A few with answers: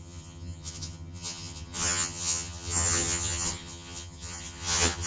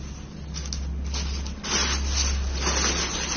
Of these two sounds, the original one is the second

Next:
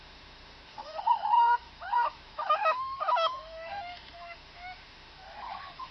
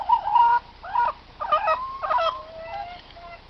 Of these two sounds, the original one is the second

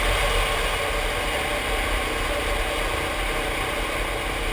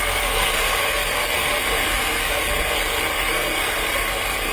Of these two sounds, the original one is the first